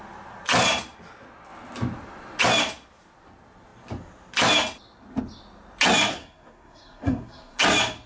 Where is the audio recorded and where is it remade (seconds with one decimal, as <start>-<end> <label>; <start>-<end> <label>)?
0.0-6.1 recorded; 6.1-7.6 remade; 7.6-8.1 recorded